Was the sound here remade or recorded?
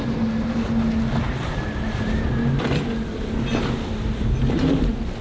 recorded